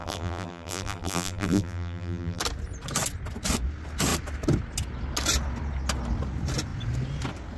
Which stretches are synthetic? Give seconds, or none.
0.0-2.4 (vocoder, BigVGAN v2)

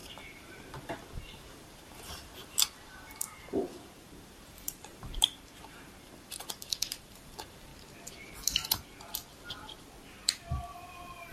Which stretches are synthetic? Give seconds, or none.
0.0-7.7 (vocoder, BigVGAN v2)

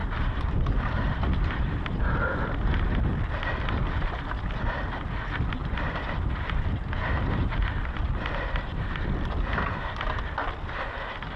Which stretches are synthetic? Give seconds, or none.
0.0-3.2 (vocoder, BigVGAN v2); 5.6-6.3